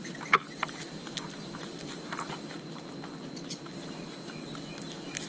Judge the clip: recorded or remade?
recorded